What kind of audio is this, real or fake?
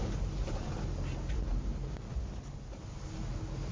real